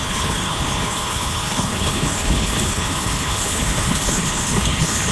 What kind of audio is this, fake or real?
fake